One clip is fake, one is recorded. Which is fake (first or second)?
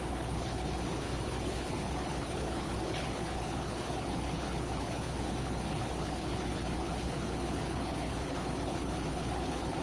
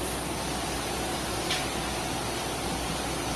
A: first